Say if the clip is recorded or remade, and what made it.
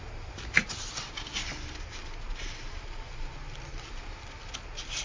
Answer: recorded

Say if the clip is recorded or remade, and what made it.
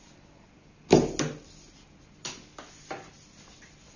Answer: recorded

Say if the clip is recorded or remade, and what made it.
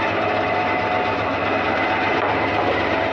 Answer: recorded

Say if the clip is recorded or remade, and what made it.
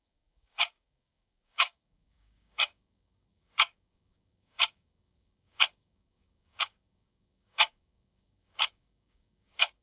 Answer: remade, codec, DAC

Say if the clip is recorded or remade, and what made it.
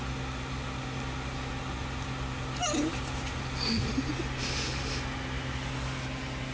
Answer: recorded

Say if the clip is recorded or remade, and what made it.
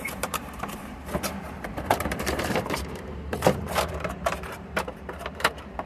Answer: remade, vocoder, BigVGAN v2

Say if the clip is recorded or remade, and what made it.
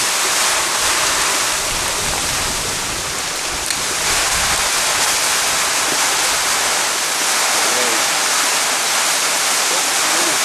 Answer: recorded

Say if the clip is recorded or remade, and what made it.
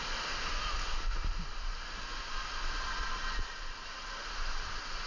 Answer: recorded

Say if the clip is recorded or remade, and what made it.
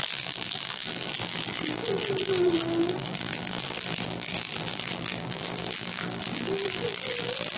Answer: remade, vocoder, BigVGAN v2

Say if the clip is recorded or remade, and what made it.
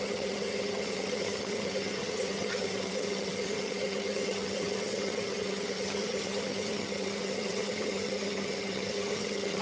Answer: remade, vocoder, HiFi-GAN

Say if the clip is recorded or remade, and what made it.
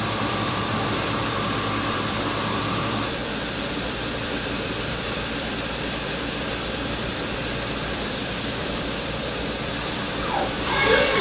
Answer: remade, vocoder, BigVGAN v2